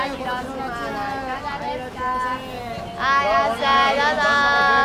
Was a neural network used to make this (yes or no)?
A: no